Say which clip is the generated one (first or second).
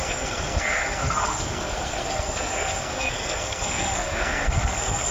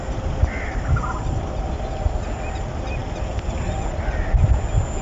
first